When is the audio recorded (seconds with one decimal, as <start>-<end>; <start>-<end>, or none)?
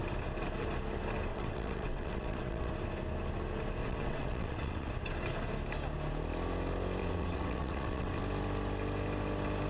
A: 0.0-1.3; 2.7-3.8; 4.9-7.0; 8.2-9.7